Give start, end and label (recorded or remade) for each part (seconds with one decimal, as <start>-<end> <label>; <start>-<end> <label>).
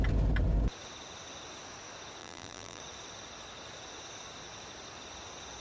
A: 0.0-2.2 recorded; 2.2-2.8 remade; 2.8-5.6 recorded